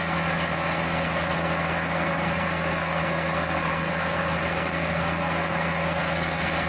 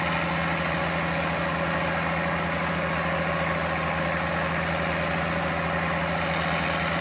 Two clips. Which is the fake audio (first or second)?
first